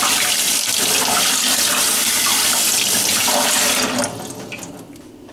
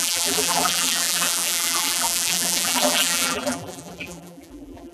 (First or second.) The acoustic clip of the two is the first